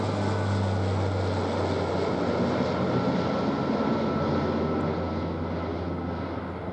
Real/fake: real